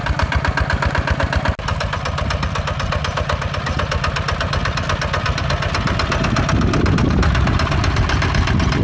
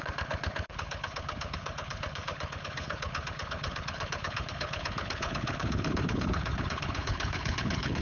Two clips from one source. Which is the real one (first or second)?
first